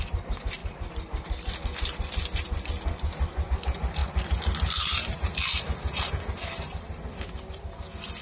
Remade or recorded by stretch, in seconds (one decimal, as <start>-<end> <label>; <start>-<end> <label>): 0.0-4.0 recorded; 4.0-6.0 remade; 6.0-8.2 recorded